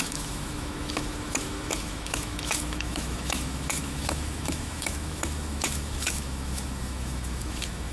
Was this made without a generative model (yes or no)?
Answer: no